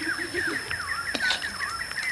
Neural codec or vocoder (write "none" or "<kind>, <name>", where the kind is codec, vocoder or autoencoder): none